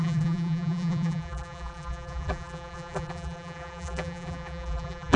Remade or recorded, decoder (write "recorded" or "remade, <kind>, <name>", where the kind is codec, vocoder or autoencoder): remade, vocoder, BigVGAN v2